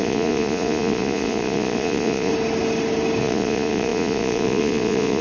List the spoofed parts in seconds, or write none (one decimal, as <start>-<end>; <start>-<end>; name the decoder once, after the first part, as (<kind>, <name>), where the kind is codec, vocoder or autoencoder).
0.0-2.3 (vocoder, Vocos); 3.2-5.2